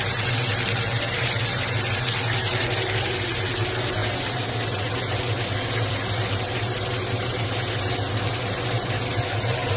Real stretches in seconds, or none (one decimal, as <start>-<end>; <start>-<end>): 0.0-9.8